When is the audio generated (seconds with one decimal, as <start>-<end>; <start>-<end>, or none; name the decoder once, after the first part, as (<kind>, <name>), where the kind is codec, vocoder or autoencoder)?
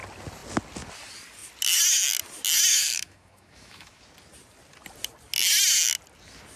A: 2.7-4.0 (autoencoder, DAC-VAE)